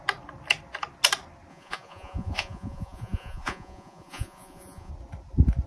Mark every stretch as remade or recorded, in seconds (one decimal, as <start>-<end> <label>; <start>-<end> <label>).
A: 0.0-1.5 recorded; 1.5-4.9 remade; 4.9-5.7 recorded